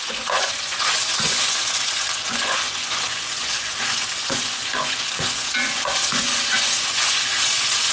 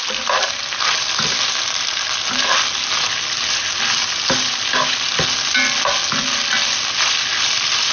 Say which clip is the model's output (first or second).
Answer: first